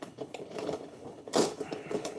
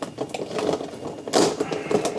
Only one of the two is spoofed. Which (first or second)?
first